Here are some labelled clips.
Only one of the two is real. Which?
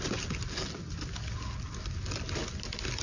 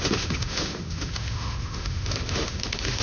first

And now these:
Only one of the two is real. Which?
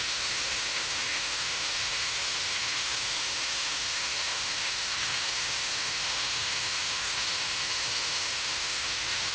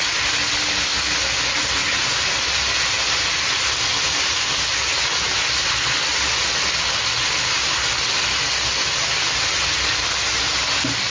second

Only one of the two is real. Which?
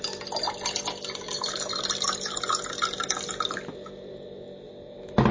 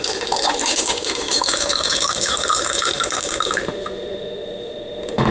first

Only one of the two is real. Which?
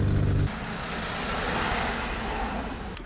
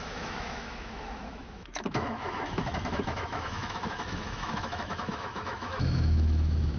first